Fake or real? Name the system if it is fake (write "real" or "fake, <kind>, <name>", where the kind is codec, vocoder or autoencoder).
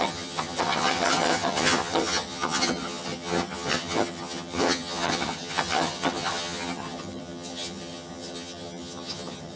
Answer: fake, vocoder, HiFi-GAN